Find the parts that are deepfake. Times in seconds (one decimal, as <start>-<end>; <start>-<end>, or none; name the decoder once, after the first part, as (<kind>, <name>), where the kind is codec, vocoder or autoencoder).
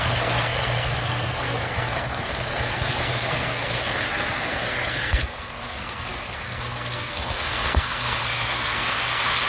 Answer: 0.0-9.5 (codec, SNAC)